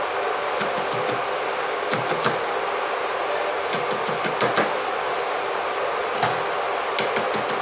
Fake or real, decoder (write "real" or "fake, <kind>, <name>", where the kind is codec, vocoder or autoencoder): real